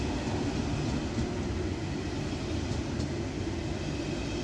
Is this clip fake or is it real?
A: real